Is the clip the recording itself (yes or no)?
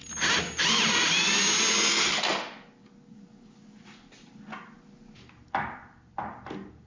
yes